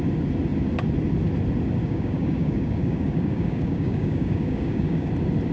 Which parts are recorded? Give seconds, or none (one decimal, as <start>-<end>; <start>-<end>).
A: 0.0-1.8; 5.1-5.5